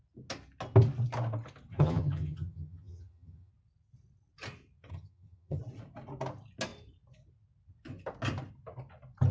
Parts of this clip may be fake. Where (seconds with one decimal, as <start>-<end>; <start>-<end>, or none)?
1.7-3.5; 4.9-5.6